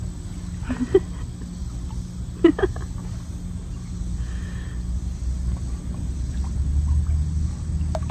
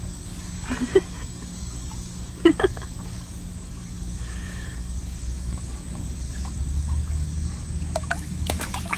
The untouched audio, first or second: first